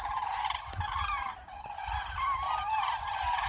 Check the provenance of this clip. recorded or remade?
recorded